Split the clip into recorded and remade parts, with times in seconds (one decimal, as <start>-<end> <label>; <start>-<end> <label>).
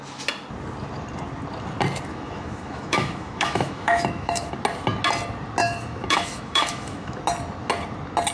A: 0.0-2.1 recorded; 2.1-4.5 remade; 4.5-5.6 recorded; 5.6-7.2 remade; 7.2-8.3 recorded